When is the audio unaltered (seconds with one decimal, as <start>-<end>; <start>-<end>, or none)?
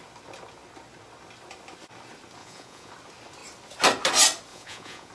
0.0-2.4; 2.9-4.5